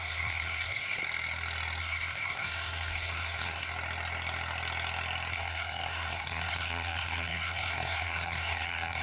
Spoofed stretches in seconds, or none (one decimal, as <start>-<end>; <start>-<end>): 0.0-1.0; 1.8-3.7; 5.3-9.0